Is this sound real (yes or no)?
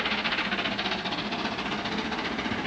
yes